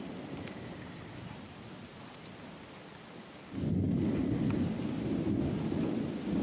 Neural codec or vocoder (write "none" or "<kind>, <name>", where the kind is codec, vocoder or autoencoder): none